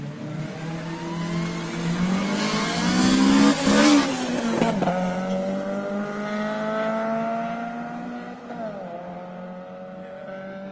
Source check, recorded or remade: recorded